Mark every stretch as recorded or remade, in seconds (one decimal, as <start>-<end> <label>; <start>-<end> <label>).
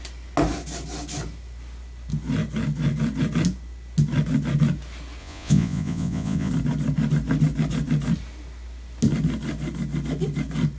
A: 0.0-5.2 recorded; 5.2-6.5 remade; 6.5-10.8 recorded